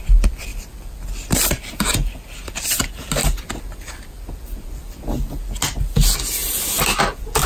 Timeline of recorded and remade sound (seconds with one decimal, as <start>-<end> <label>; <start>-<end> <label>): 0.0-7.5 recorded